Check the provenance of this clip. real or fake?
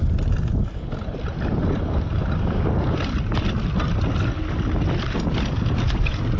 real